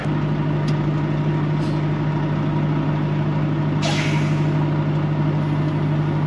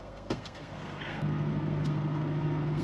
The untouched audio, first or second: first